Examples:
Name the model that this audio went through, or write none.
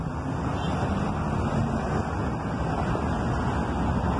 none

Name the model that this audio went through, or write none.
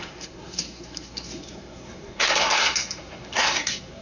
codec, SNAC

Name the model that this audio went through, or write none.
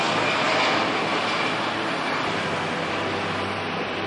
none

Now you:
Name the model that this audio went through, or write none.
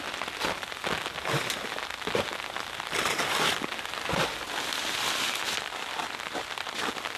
none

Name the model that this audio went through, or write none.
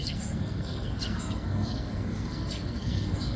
codec, SNAC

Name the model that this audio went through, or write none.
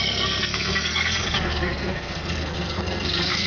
codec, SNAC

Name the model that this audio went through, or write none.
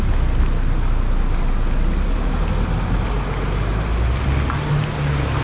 none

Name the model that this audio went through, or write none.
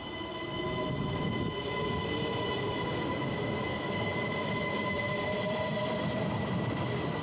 none